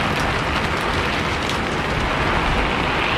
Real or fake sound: real